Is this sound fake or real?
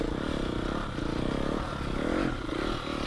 real